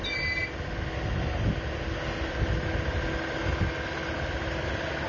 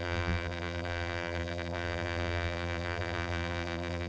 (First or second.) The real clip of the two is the first